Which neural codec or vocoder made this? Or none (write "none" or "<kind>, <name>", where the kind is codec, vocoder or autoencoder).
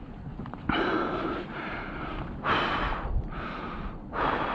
vocoder, BigVGAN v2